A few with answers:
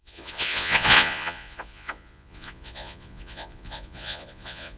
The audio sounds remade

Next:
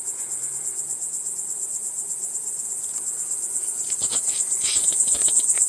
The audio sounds remade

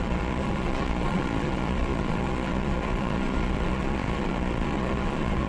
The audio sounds remade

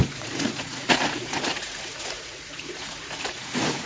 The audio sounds remade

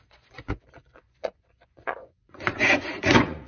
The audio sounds remade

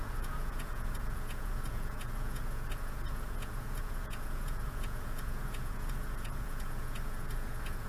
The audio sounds remade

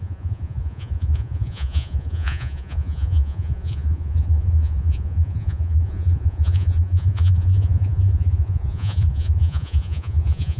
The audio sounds remade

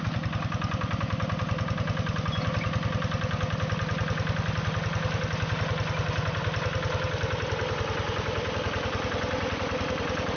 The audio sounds recorded